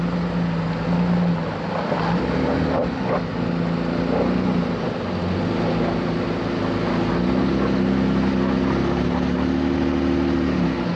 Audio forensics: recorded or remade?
recorded